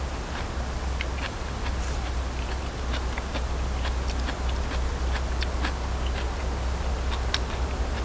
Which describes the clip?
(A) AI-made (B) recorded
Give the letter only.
B